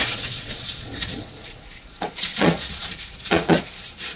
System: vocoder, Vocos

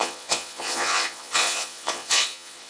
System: vocoder, Vocos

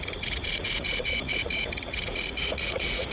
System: vocoder, Vocos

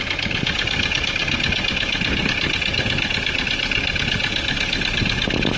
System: none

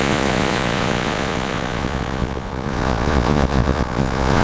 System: vocoder, Vocos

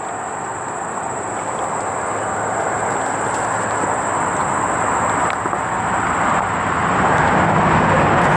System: none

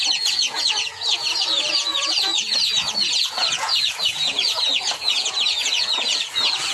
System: vocoder, Vocos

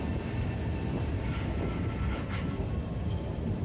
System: none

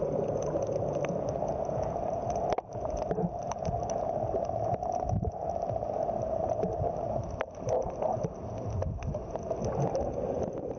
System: none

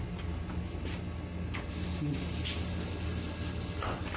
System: none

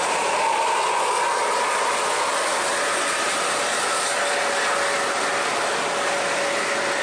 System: none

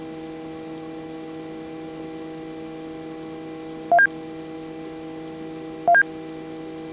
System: none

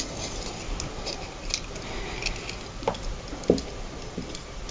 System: none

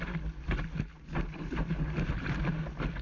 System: none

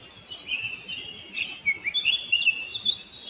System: none